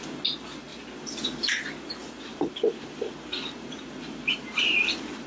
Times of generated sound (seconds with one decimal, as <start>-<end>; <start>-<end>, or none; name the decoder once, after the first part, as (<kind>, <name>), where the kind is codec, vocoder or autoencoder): 2.0-5.3 (vocoder, BigVGAN v2)